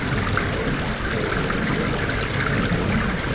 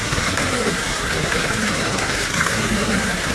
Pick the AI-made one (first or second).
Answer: second